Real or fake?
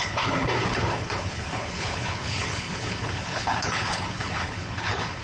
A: fake